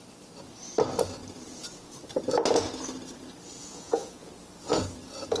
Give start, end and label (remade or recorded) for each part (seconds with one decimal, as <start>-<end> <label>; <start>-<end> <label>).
0.0-3.6 recorded; 3.6-4.3 remade; 4.3-5.4 recorded